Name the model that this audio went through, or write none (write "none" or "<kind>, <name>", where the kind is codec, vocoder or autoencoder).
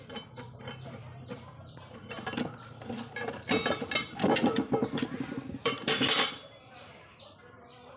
vocoder, BigVGAN v2